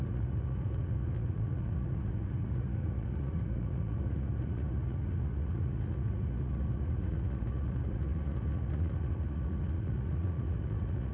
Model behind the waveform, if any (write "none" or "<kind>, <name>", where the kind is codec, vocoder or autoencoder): vocoder, Vocos